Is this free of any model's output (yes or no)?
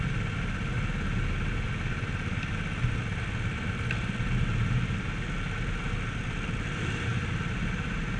yes